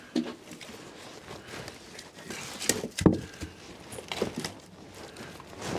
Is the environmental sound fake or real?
real